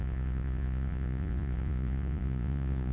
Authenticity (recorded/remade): remade